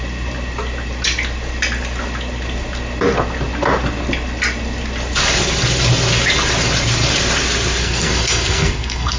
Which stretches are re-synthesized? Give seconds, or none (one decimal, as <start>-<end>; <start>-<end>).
7.8-9.2